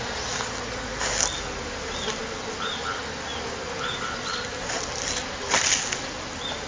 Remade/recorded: recorded